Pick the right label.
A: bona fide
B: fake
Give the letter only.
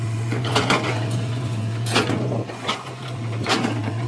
B